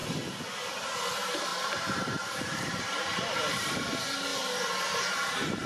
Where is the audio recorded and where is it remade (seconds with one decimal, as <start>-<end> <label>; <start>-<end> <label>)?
0.0-1.1 recorded; 1.1-4.3 remade; 4.3-4.8 recorded; 4.8-5.7 remade